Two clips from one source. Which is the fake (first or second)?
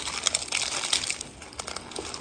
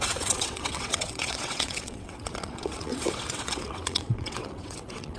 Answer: second